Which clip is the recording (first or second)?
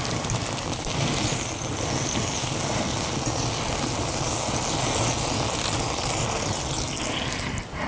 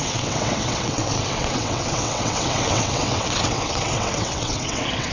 first